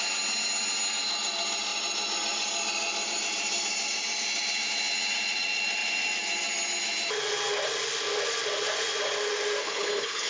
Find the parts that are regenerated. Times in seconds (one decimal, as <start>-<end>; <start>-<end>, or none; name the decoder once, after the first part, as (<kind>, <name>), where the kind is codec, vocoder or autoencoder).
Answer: 9.6-10.3 (codec, HILCodec)